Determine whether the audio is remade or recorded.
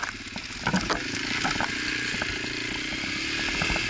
recorded